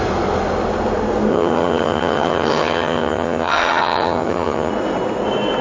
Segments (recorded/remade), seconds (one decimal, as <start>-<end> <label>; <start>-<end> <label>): 0.0-1.3 recorded; 1.3-4.7 remade; 4.7-5.6 recorded